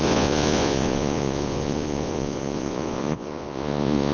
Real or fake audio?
fake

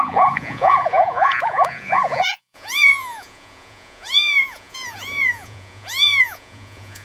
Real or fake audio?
fake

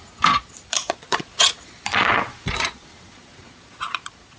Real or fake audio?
fake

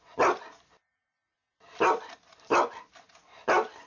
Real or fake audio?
real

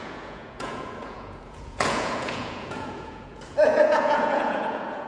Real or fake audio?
fake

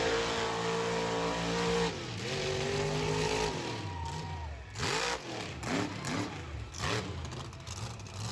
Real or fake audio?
real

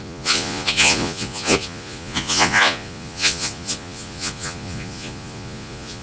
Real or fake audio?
fake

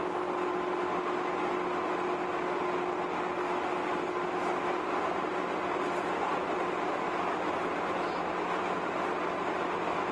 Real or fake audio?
real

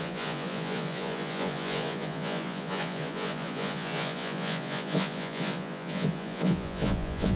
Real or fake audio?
fake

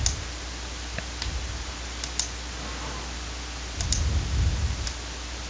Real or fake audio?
real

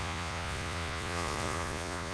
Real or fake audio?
fake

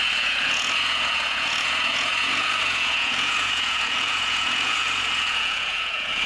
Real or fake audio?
fake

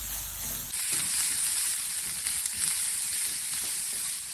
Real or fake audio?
real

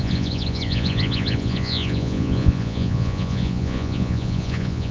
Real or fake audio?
fake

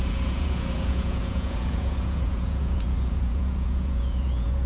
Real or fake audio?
fake